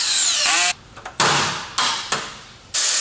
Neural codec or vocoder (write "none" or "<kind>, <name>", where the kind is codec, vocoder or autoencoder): none